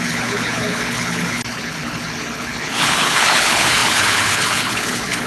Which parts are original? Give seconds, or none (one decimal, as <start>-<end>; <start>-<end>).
none